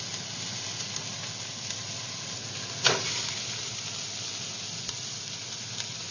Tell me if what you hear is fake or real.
real